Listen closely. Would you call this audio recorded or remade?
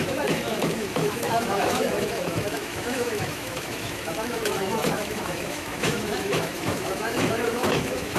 remade